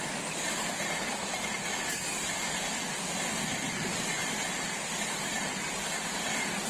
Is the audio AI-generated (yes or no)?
no